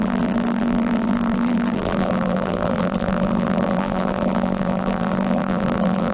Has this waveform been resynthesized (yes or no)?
yes